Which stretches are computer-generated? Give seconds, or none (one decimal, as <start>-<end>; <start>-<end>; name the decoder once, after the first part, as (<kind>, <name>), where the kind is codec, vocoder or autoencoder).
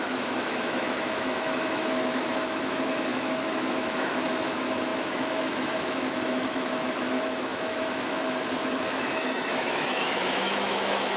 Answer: 0.0-11.2 (autoencoder, DAC-VAE)